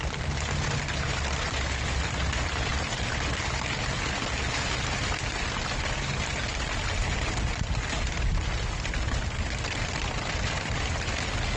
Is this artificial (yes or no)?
no